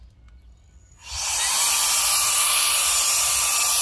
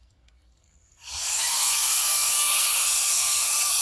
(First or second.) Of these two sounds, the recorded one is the first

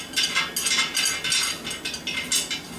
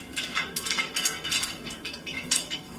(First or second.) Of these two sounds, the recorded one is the first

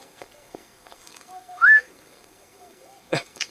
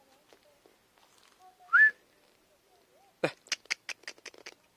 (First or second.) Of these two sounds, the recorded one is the second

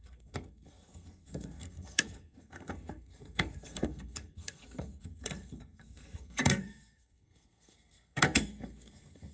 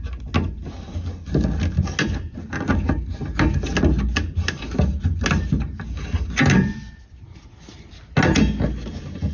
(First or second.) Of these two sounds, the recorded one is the second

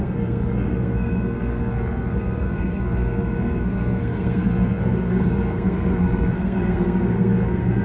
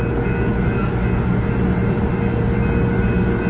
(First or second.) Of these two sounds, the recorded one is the second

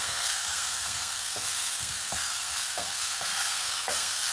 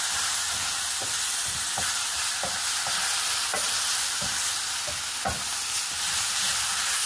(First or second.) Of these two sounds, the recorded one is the second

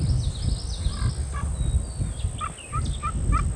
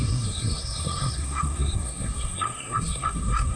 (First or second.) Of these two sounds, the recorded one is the first